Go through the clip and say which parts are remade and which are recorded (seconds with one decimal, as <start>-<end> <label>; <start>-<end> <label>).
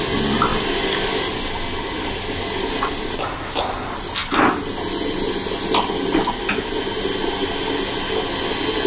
0.0-8.9 recorded